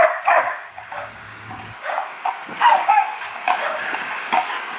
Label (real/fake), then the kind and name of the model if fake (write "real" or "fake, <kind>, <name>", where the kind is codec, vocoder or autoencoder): fake, codec, DAC